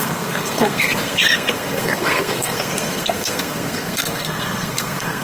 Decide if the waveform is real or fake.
fake